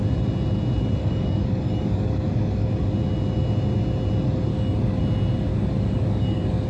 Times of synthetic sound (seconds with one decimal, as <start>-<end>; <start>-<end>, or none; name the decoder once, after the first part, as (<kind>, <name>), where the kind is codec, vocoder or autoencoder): 1.0-2.7 (codec, DAC); 4.5-5.0; 5.5-6.7

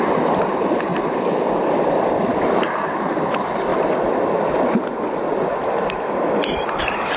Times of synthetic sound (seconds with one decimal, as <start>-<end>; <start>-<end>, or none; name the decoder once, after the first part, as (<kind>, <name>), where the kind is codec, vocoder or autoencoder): 0.0-3.7 (vocoder, BigVGAN v2); 6.8-7.2